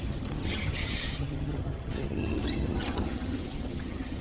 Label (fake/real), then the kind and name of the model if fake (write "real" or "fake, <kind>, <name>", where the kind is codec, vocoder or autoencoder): fake, vocoder, HiFi-GAN